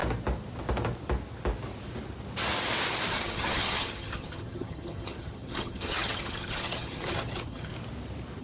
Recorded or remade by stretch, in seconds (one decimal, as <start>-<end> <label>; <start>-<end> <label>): 0.0-3.1 recorded; 3.1-7.7 remade; 7.7-8.4 recorded